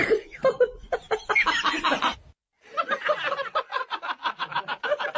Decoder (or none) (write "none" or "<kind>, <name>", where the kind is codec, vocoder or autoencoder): none